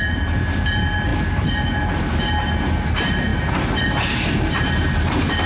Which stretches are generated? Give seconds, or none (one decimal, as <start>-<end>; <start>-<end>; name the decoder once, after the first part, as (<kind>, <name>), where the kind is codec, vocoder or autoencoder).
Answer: none